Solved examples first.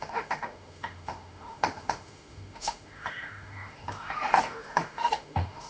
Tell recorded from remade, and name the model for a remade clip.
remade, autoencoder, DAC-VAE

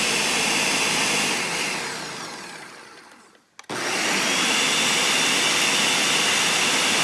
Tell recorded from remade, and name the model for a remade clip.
recorded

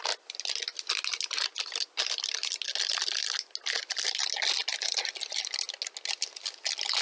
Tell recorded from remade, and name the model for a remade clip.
recorded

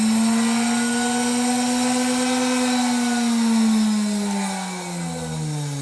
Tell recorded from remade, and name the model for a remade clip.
recorded